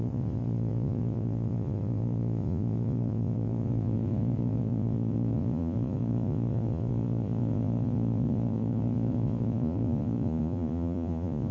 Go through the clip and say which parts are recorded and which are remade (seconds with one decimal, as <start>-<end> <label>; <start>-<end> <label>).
0.0-11.5 remade